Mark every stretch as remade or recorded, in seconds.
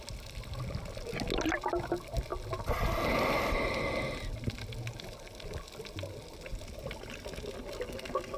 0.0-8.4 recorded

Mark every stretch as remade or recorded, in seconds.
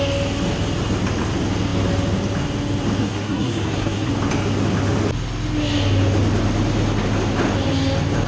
0.0-3.0 recorded; 3.0-4.1 remade; 4.1-8.3 recorded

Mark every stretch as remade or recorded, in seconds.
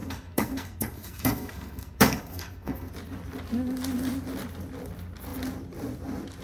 0.0-2.9 remade; 2.9-6.4 recorded